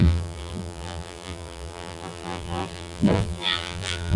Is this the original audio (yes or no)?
no